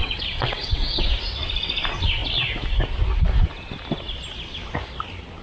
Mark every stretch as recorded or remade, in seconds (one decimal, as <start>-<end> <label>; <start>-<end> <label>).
0.0-1.0 remade; 1.0-5.4 recorded

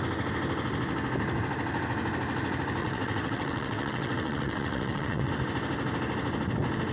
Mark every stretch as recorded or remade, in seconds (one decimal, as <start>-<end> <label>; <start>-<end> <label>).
0.0-2.8 recorded; 2.8-5.3 remade; 5.3-6.9 recorded